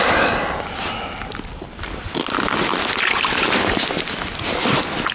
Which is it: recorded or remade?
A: recorded